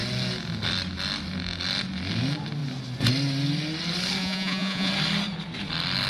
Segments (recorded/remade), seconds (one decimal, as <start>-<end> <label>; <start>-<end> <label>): 0.0-4.2 recorded; 4.2-4.9 remade; 4.9-6.1 recorded